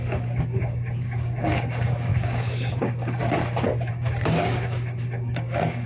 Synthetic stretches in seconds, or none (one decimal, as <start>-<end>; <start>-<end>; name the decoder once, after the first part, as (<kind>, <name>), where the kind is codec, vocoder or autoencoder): 0.0-3.2 (codec, DAC); 3.9-5.9